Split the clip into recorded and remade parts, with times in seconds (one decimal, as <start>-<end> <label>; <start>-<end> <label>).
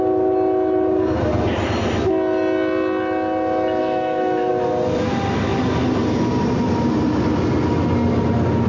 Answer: 0.0-3.8 recorded; 3.8-4.5 remade; 4.5-8.7 recorded